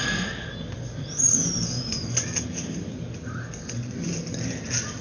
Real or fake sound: real